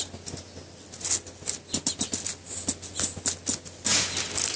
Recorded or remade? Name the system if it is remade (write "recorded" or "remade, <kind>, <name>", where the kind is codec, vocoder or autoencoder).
recorded